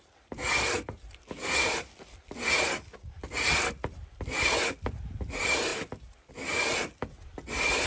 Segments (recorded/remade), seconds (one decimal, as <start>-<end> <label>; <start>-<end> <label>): 0.0-7.9 recorded